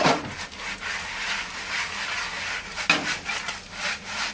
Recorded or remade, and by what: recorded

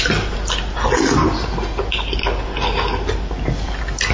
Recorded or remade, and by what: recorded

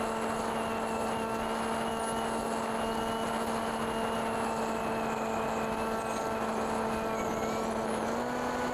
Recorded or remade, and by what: recorded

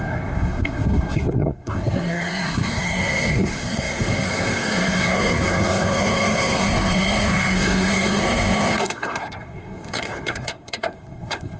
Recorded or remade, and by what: remade, codec, SNAC